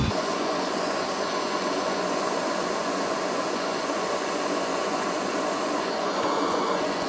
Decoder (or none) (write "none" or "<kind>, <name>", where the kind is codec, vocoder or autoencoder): vocoder, Vocos